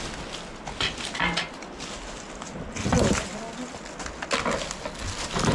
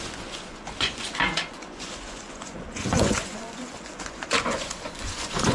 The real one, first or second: first